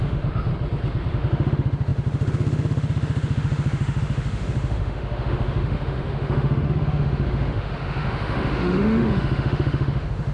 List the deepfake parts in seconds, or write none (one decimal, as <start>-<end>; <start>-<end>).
0.0-0.5; 1.1-10.3